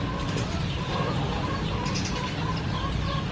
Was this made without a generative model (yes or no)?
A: yes